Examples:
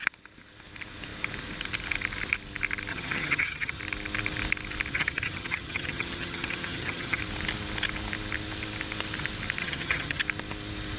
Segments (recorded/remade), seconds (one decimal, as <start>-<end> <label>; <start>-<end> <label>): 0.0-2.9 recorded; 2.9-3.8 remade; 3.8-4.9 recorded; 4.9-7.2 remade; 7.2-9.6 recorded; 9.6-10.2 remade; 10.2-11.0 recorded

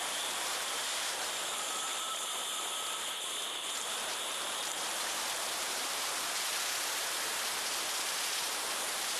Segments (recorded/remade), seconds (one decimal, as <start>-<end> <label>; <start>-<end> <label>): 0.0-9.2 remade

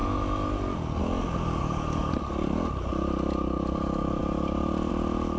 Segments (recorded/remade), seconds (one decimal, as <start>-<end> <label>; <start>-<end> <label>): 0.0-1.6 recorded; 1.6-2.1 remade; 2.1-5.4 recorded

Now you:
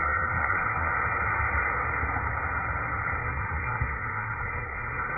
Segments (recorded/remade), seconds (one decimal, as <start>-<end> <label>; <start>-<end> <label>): 0.0-0.9 remade; 0.9-3.2 recorded; 3.2-5.2 remade

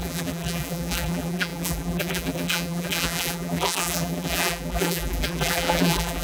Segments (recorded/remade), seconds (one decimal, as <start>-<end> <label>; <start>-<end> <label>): 0.0-6.2 remade